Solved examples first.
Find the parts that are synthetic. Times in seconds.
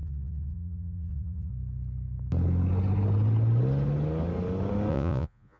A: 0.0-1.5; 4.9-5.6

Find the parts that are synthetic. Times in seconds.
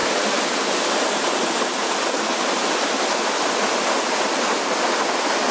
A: none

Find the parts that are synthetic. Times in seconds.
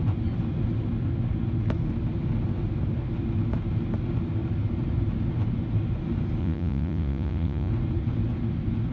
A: 6.4-7.7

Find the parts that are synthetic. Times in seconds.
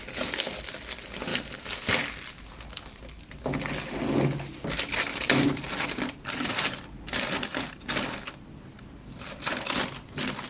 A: none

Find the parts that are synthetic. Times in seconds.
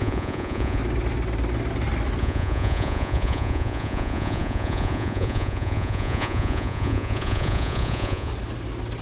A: 0.0-0.8; 2.2-8.3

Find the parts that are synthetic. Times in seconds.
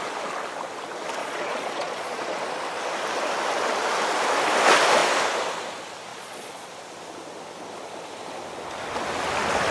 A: 1.2-2.4; 6.1-6.7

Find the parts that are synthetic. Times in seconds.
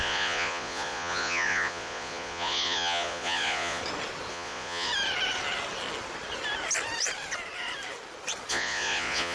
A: 0.0-3.8; 4.3-4.9; 8.5-9.3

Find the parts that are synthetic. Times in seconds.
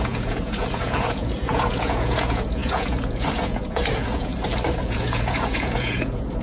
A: 0.0-4.3; 4.8-6.4